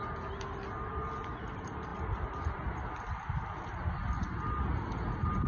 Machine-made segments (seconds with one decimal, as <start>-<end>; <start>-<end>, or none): none